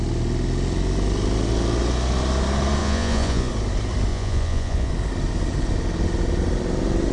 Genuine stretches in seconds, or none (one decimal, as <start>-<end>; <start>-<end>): 0.0-2.8; 3.5-4.1; 4.9-7.1